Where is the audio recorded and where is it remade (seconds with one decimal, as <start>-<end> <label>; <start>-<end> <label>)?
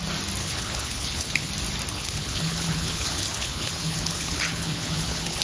0.0-0.4 recorded; 0.4-1.5 remade; 1.5-1.9 recorded; 1.9-5.4 remade